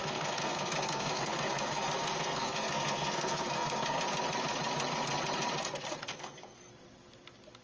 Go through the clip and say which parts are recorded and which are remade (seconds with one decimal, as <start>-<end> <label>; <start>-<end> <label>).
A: 0.0-4.0 remade; 4.0-6.1 recorded; 6.1-6.7 remade; 6.7-7.6 recorded